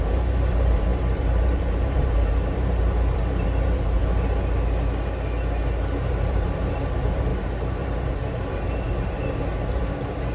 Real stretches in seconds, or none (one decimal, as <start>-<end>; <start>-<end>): 4.0-6.1